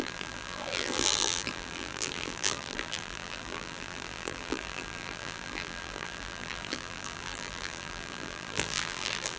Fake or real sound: fake